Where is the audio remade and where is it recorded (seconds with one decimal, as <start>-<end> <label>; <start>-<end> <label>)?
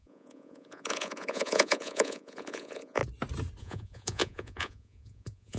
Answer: 0.0-3.0 remade; 3.0-3.6 recorded; 3.6-5.6 remade